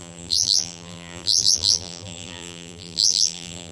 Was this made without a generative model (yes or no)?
no